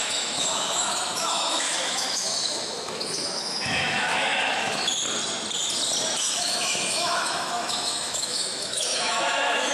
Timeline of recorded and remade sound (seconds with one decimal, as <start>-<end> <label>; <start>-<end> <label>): 0.0-4.9 remade; 4.9-6.2 recorded; 6.2-9.7 remade